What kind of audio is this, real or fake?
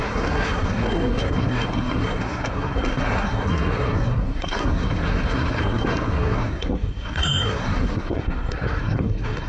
fake